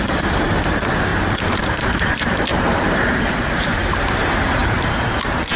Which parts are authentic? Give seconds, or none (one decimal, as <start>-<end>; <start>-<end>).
1.1-1.7